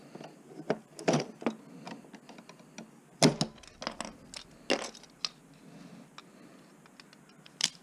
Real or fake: real